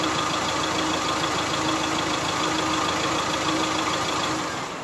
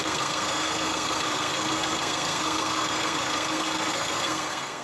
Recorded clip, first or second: first